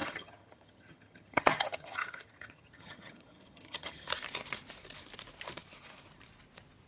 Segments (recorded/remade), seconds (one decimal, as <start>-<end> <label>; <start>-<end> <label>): 0.0-4.1 remade; 4.1-6.9 recorded